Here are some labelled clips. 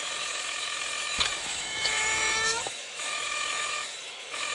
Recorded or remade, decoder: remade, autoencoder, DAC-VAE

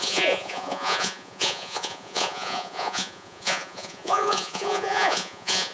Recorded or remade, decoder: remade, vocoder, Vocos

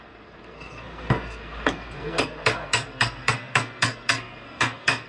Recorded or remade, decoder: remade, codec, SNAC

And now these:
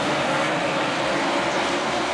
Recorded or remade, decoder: recorded